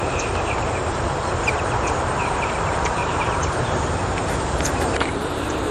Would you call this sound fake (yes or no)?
yes